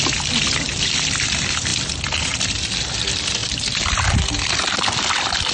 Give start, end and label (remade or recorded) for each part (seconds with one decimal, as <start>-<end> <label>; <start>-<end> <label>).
0.0-3.4 recorded; 3.4-5.5 remade